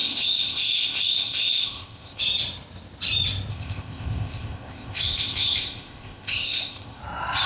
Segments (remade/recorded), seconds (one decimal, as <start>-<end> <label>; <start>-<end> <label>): 0.0-2.2 remade; 2.2-3.5 recorded; 3.5-7.0 remade; 7.0-7.5 recorded